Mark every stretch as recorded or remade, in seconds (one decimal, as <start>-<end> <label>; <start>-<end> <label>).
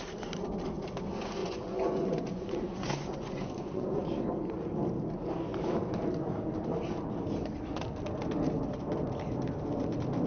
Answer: 0.0-1.4 recorded; 1.4-4.0 remade; 4.0-10.3 recorded